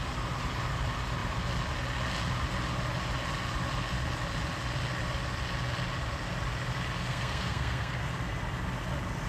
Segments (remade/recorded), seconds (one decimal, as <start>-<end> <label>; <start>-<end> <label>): 0.0-7.1 recorded; 7.1-8.0 remade; 8.0-9.3 recorded

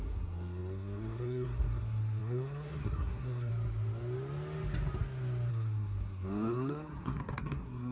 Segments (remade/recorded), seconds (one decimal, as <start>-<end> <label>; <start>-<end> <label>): 0.0-3.5 remade; 3.5-5.5 recorded; 5.5-7.9 remade